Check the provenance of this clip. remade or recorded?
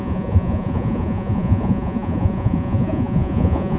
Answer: remade